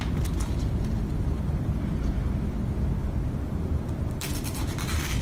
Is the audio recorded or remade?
remade